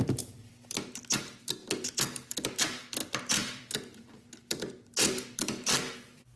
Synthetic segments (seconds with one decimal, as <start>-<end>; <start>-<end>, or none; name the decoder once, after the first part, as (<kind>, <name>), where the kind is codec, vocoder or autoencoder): 0.0-6.4 (vocoder, BigVGAN v2)